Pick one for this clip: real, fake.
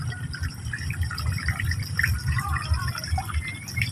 real